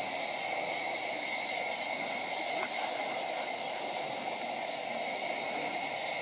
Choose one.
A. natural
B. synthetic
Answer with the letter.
A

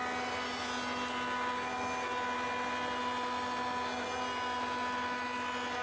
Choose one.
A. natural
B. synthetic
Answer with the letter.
A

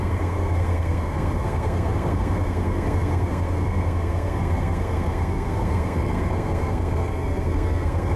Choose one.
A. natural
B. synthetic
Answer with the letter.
B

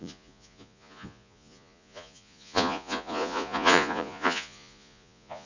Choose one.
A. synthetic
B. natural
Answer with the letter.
A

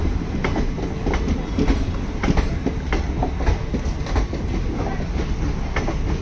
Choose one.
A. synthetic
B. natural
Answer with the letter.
B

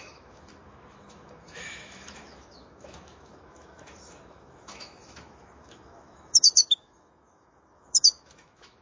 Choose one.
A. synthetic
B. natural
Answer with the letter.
A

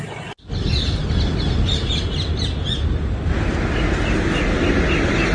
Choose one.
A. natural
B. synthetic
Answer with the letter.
A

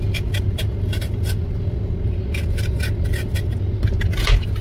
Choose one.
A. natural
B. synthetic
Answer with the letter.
A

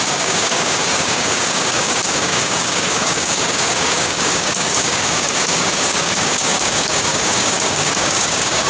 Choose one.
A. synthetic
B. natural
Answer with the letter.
A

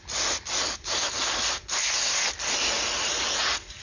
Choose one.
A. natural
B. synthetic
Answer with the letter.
A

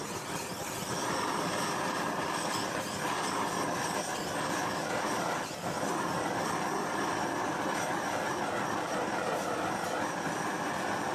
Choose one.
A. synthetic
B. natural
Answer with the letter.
B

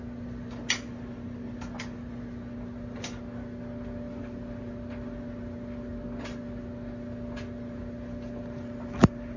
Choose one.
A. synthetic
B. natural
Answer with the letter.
B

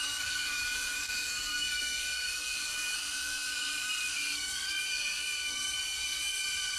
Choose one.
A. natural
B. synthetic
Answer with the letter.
B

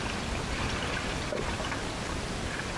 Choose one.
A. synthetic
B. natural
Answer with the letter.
B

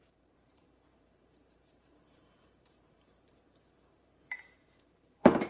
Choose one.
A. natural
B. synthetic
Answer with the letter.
B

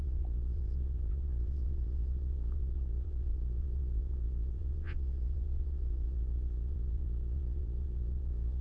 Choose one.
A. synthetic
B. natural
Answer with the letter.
A